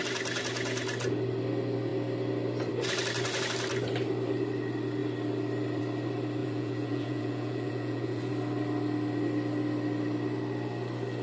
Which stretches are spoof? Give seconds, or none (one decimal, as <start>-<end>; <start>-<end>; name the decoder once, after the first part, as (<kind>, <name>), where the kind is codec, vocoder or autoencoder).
6.4-8.3 (vocoder, Vocos)